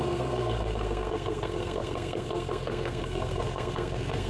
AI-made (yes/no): yes